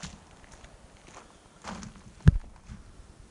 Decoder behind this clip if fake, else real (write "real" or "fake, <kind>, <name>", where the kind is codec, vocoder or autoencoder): real